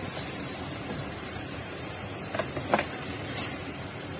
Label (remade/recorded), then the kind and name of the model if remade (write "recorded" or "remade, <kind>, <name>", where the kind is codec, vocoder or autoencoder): remade, vocoder, BigVGAN v2